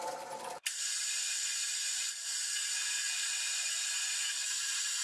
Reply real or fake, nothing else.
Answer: real